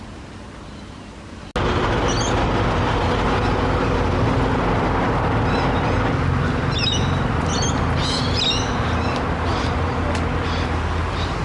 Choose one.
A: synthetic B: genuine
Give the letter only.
B